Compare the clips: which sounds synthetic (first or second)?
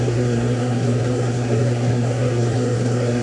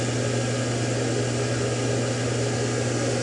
first